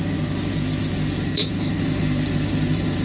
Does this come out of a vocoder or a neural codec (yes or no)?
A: yes